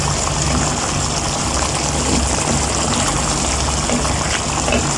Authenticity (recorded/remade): recorded